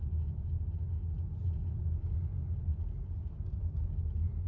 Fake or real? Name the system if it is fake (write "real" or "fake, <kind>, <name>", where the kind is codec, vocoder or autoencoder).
real